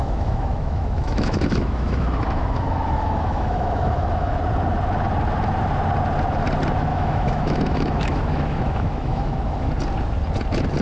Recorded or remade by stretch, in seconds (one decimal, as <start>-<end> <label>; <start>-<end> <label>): 0.0-4.4 remade; 4.4-6.9 recorded; 6.9-9.7 remade; 9.7-10.8 recorded